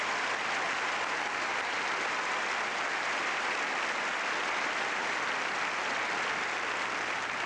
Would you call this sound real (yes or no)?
yes